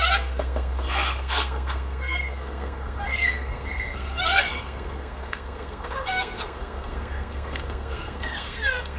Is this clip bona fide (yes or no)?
no